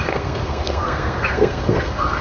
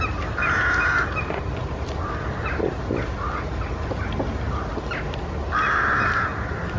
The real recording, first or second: second